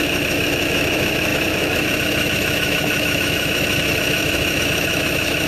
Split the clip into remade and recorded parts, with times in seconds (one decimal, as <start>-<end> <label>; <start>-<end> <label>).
0.0-5.5 remade